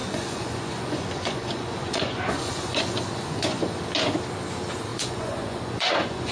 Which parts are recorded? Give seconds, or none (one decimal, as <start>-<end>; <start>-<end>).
3.8-4.9